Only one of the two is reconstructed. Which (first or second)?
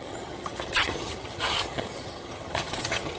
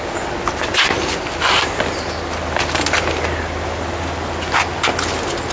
first